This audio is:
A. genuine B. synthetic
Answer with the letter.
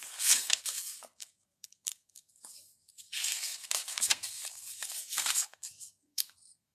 B